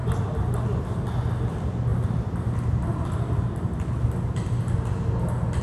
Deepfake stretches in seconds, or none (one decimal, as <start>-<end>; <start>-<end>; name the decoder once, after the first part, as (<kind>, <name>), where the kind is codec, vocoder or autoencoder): none